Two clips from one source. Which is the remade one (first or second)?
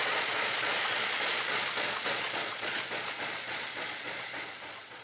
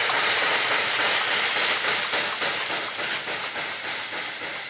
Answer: first